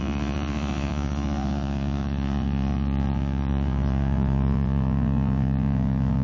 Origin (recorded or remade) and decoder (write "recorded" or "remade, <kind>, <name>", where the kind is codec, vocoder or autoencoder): remade, vocoder, Vocos